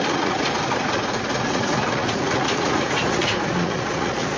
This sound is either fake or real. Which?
fake